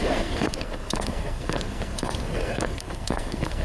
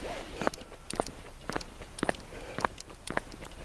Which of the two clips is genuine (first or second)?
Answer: second